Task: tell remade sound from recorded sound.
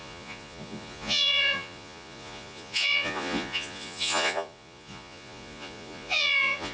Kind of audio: remade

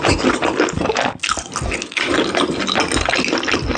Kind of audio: recorded